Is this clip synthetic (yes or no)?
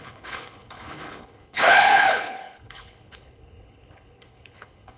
yes